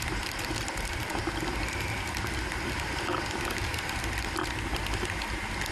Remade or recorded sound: recorded